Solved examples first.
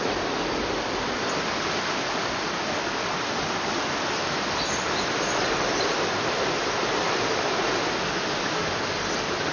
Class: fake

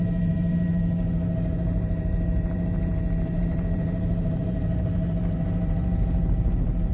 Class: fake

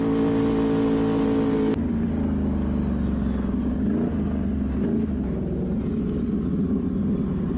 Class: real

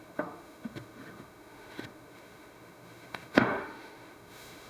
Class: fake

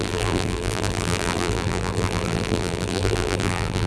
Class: fake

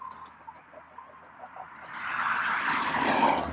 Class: real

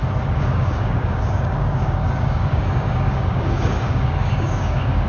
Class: fake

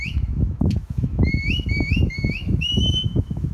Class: fake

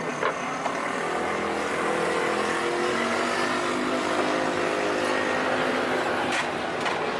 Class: real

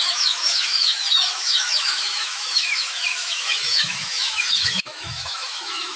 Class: fake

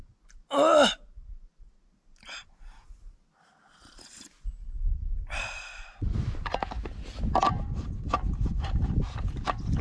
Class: real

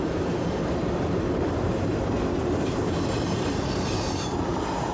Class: fake